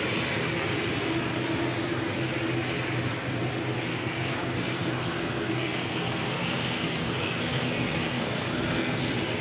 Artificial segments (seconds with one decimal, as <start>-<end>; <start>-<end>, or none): 3.9-9.0